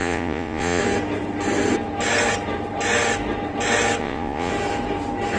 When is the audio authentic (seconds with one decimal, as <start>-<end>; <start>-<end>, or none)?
0.8-4.0; 4.5-5.4